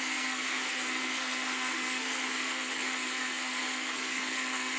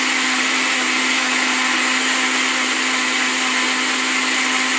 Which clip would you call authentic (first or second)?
second